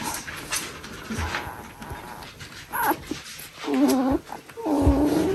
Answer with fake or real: real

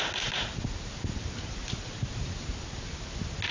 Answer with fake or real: real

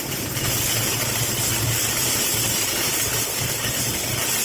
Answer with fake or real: real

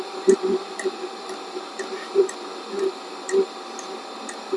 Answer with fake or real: real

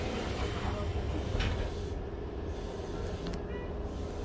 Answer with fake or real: real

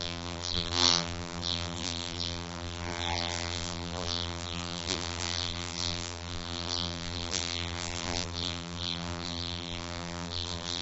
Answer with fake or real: fake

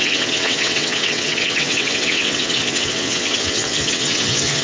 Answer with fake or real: fake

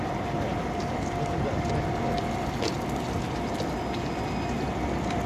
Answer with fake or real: real